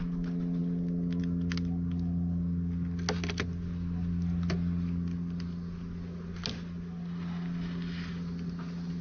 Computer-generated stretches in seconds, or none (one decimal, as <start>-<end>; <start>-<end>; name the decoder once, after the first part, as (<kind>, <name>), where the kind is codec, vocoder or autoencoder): none